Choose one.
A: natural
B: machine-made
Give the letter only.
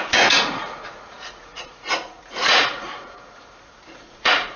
B